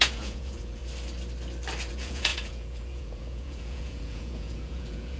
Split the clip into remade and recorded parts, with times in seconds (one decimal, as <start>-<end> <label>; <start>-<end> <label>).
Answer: 0.0-0.8 remade; 0.8-1.9 recorded; 1.9-5.2 remade